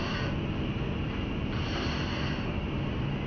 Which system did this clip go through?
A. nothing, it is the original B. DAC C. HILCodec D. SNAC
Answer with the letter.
A